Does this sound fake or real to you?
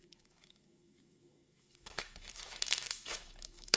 fake